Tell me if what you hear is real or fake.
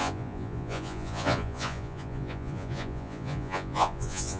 fake